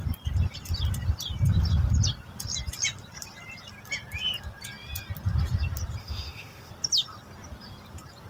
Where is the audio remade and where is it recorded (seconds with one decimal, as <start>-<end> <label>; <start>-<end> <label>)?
0.0-6.0 recorded; 6.0-6.7 remade; 6.7-8.3 recorded